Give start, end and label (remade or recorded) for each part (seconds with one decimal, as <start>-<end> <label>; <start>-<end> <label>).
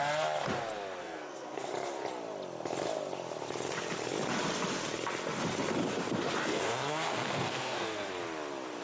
0.0-1.0 recorded; 1.0-1.7 remade; 1.7-6.4 recorded; 6.4-8.1 remade; 8.1-8.8 recorded